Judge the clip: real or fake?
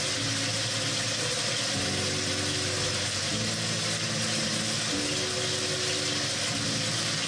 real